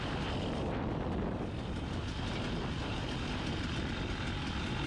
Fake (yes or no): no